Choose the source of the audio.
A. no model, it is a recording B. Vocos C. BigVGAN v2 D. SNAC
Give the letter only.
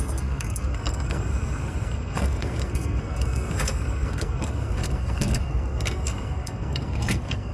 D